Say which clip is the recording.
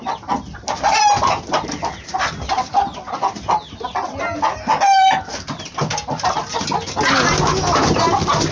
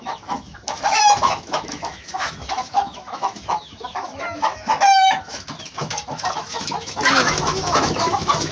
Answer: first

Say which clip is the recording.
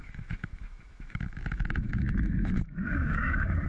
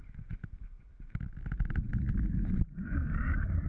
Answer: second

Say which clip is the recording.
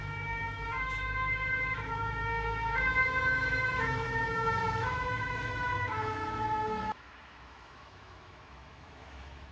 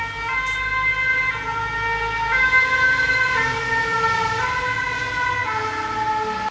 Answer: second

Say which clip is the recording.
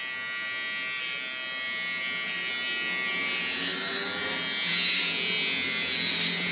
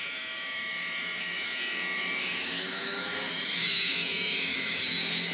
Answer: first